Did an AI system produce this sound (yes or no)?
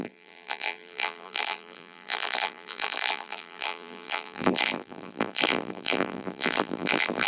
yes